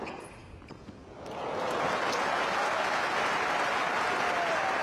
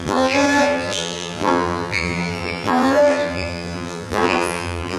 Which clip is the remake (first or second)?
second